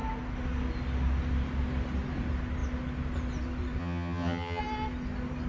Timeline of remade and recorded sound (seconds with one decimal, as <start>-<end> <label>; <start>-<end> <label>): 0.0-3.8 recorded; 3.8-4.6 remade; 4.6-5.5 recorded